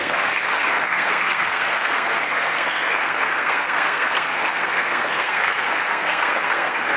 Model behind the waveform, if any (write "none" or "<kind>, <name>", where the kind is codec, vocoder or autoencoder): codec, SNAC